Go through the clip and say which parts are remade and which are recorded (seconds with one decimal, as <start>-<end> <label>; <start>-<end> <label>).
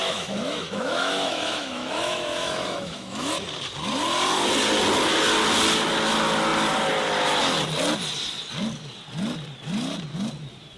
0.0-3.3 remade; 3.3-10.8 recorded